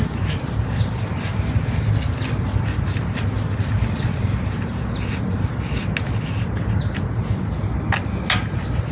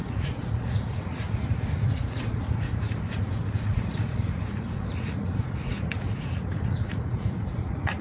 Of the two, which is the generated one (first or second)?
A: second